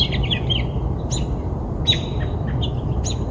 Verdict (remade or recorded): recorded